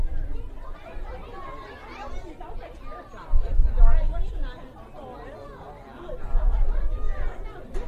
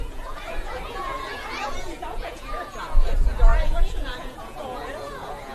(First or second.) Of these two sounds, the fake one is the second